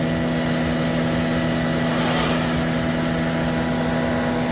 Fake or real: real